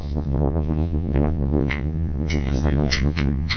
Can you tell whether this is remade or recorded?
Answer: remade